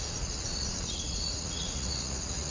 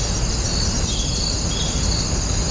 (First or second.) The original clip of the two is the second